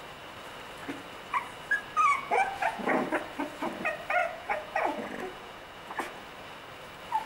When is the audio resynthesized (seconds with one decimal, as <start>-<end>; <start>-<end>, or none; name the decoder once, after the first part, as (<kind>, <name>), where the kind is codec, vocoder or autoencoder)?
2.1-3.0 (vocoder, Vocos); 4.2-6.2